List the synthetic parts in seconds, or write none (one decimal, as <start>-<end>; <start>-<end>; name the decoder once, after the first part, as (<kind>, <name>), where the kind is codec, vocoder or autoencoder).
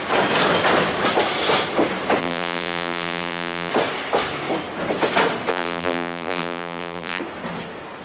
2.2-3.7 (vocoder, BigVGAN v2); 5.5-7.2